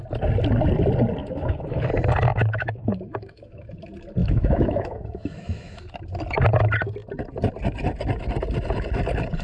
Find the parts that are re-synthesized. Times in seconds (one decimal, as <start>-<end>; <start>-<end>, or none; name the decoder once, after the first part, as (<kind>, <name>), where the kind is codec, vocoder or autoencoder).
1.2-1.8 (autoencoder, DAC-VAE); 2.3-3.7; 4.2-5.8